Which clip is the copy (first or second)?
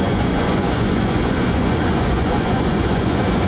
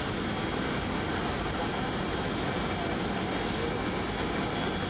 first